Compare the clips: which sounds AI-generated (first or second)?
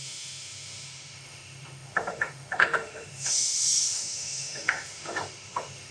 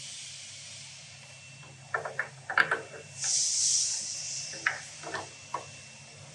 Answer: first